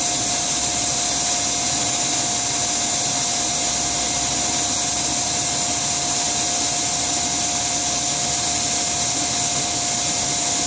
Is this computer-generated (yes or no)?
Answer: no